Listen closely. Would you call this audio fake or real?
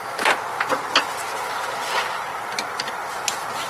real